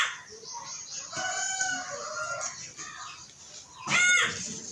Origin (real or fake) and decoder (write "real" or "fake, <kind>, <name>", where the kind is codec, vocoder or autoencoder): real